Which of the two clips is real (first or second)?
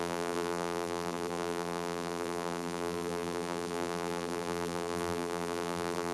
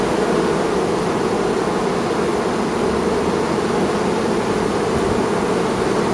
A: second